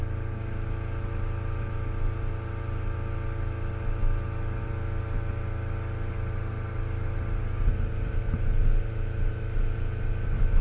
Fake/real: real